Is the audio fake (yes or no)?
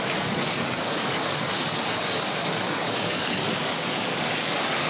yes